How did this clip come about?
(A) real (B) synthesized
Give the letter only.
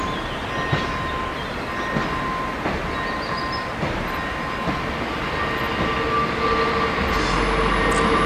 A